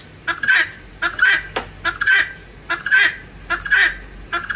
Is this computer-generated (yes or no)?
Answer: no